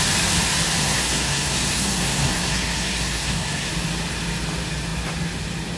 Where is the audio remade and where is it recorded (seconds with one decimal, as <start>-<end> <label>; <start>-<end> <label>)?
0.0-0.8 recorded; 0.8-3.7 remade; 3.7-5.8 recorded